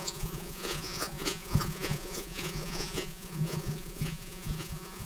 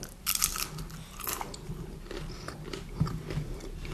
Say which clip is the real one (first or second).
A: second